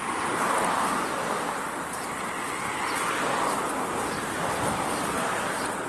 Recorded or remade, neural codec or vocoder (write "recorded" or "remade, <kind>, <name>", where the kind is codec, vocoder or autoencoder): recorded